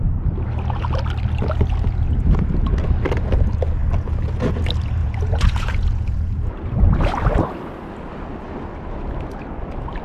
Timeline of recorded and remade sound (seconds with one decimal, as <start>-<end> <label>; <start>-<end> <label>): 0.0-5.0 recorded; 5.0-6.5 remade; 6.5-10.0 recorded